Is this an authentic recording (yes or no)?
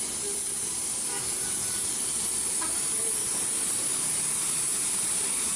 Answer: yes